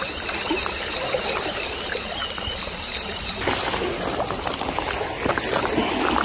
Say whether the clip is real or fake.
real